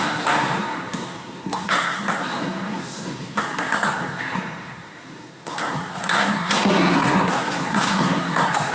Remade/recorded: remade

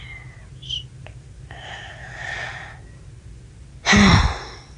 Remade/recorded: recorded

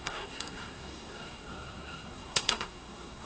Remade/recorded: remade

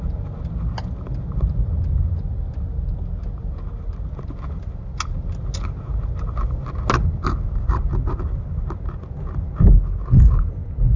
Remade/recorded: recorded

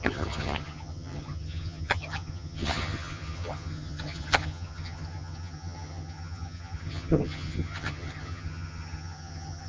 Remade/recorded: remade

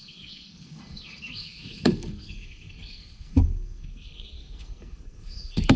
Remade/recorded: remade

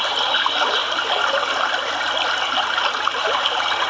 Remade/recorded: recorded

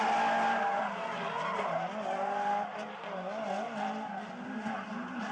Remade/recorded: recorded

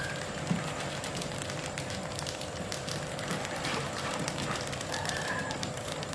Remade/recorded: remade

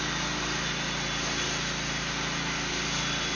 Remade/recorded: recorded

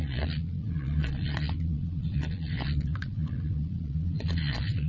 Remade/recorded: remade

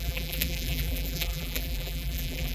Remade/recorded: remade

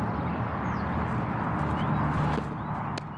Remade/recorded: recorded